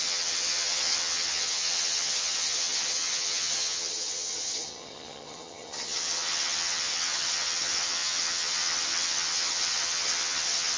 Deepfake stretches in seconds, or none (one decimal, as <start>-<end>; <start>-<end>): 0.0-10.8